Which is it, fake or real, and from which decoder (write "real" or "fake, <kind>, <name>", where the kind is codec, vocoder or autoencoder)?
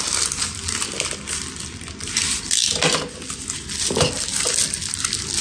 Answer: real